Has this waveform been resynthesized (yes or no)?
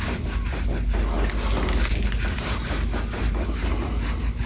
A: no